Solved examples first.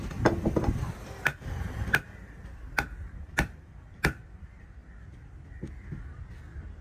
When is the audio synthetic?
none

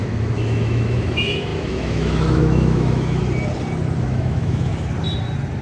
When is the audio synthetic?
0.0-3.2 (autoencoder, DAC-VAE); 4.0-4.7